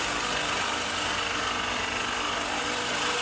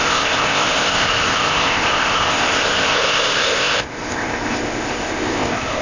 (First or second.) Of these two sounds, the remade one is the second